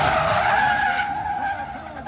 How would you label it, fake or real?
real